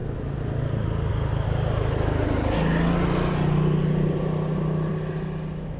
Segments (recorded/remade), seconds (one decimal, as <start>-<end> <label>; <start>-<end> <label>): 0.0-5.8 recorded